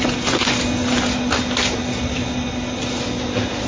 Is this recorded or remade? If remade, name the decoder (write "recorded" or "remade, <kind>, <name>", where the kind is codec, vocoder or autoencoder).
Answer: recorded